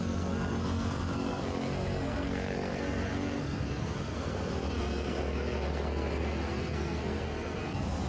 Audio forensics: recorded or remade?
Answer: remade